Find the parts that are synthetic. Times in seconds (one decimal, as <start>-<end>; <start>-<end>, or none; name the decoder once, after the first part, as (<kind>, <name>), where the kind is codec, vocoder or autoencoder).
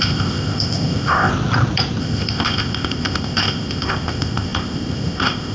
0.0-1.3 (codec, ZipCodec); 2.0-5.5